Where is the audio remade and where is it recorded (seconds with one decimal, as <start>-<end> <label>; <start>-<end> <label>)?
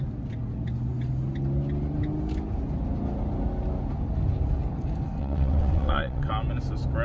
0.0-5.2 recorded; 5.2-6.3 remade; 6.3-7.0 recorded